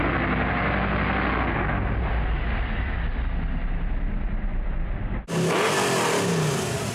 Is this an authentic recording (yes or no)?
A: yes